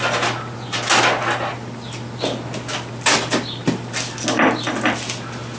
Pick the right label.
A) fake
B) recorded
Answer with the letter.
B